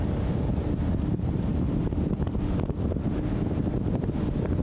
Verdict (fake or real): fake